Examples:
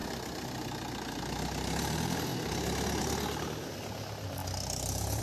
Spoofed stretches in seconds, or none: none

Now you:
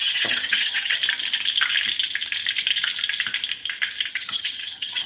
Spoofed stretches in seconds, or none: 0.0-1.0; 4.1-5.1

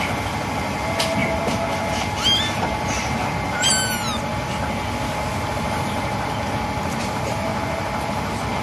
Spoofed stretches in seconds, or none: none

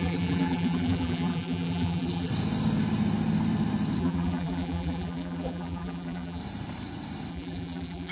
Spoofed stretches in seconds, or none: 0.0-2.3; 4.0-6.4; 7.3-8.1

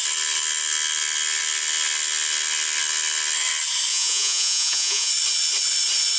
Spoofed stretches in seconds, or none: 3.9-5.1

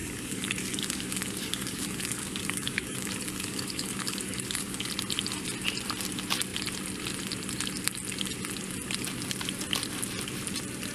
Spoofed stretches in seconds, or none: 0.0-4.9

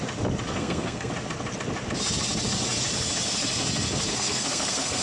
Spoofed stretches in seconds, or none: 0.5-1.1; 4.1-5.0

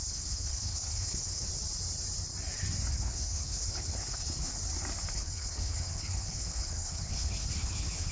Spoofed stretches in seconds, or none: 0.0-1.5; 2.9-4.5; 5.1-8.1